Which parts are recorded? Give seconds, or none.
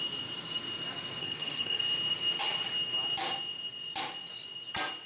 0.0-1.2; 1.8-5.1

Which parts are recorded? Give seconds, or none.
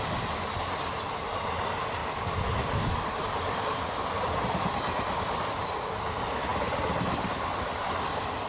0.0-2.0; 5.5-6.5; 7.1-8.5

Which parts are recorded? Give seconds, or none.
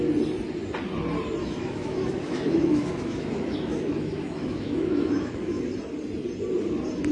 0.0-1.4; 5.6-7.1